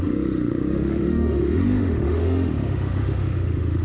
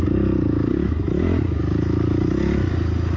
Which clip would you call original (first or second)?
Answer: second